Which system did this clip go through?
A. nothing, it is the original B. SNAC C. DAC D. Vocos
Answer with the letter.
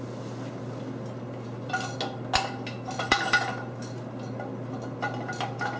A